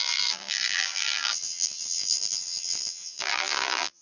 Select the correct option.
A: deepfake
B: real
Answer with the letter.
A